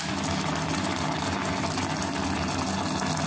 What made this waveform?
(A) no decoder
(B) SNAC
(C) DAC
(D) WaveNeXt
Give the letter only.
A